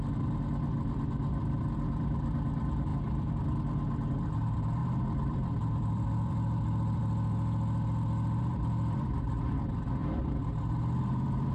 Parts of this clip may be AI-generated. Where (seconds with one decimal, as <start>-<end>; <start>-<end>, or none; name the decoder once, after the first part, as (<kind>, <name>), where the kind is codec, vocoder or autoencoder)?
0.0-7.0 (vocoder, BigVGAN v2); 8.4-11.5